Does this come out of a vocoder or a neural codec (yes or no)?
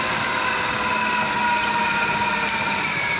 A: no